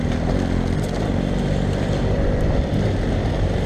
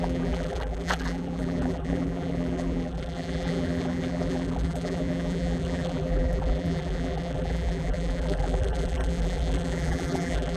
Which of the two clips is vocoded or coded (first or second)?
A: second